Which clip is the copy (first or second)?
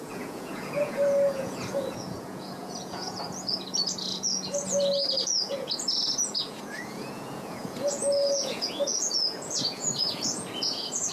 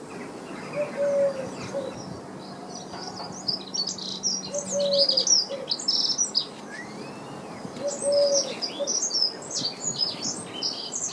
first